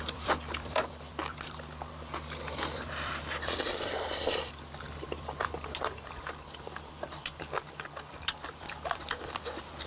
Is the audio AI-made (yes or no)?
yes